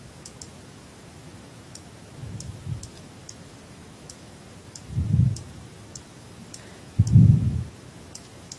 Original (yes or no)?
no